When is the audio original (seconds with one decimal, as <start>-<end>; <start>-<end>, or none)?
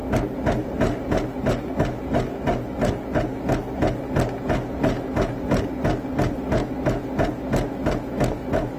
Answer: 0.0-8.8